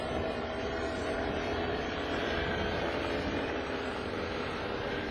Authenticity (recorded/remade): remade